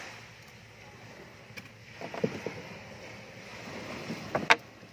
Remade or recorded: recorded